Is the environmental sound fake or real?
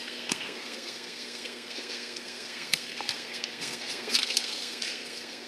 fake